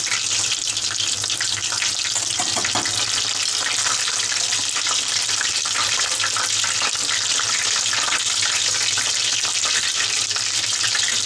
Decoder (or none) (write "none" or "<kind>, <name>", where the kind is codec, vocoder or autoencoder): none